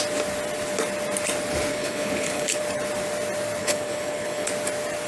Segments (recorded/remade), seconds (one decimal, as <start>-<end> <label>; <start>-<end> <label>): 0.0-1.7 recorded; 1.7-2.6 remade; 2.6-3.6 recorded; 3.6-4.5 remade; 4.5-5.1 recorded